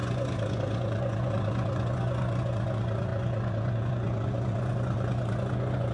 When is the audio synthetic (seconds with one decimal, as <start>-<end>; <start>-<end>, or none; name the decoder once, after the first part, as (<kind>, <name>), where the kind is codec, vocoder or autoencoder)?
0.0-5.9 (vocoder, Vocos)